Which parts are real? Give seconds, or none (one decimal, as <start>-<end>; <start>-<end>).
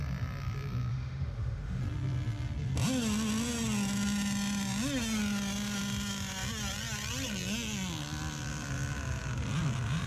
0.0-0.9; 1.8-10.1